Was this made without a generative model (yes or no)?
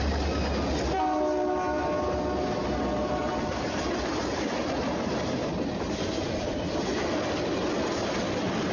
yes